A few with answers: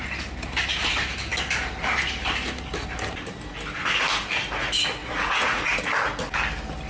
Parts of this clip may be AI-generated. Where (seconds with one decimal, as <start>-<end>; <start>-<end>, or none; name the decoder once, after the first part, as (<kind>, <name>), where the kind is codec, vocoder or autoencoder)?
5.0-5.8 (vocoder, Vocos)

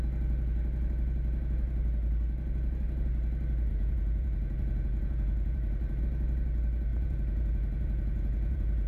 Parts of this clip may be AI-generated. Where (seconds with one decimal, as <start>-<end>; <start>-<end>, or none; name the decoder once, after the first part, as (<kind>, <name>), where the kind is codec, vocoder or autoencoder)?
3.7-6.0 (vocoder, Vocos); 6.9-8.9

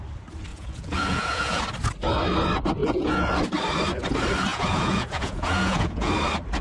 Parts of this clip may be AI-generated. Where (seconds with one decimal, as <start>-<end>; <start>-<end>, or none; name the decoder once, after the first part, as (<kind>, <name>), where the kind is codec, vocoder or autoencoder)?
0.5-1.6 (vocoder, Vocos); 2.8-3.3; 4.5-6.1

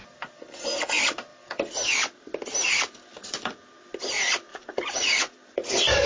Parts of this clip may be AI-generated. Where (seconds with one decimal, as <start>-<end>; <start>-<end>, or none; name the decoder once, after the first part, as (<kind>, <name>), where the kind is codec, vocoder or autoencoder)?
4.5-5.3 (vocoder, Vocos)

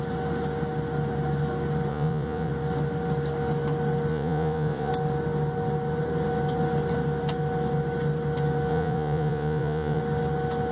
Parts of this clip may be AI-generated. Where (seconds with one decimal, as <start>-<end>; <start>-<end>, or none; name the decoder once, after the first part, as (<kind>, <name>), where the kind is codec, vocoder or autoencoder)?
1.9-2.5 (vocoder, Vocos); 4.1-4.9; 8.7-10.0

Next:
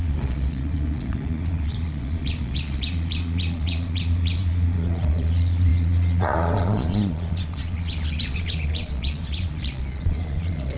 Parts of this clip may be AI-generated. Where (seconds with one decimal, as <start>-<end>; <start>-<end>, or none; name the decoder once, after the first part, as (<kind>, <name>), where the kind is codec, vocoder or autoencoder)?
0.0-10.8 (vocoder, Vocos)